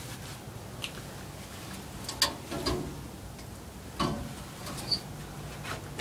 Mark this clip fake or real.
real